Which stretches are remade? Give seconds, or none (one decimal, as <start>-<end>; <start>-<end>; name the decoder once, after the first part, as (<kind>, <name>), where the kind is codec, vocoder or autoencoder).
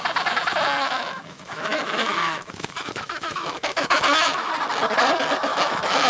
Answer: 0.8-4.5 (autoencoder, DAC-VAE); 5.5-6.1